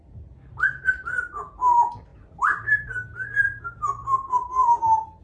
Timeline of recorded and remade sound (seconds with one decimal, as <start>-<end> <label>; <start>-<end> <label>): 0.0-2.1 recorded; 2.1-2.9 remade; 2.9-4.0 recorded; 4.0-4.8 remade; 4.8-5.2 recorded